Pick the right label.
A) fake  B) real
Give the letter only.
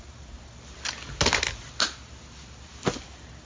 B